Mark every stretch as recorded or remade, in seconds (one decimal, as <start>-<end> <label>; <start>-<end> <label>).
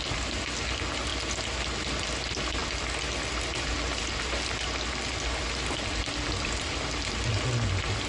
0.0-8.1 recorded